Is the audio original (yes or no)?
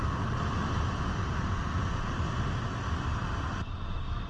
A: yes